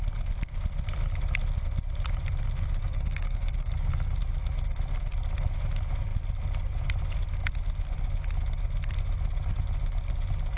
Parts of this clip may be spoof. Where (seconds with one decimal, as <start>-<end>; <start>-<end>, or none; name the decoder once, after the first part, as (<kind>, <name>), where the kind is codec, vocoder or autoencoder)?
2.8-4.2 (codec, DAC)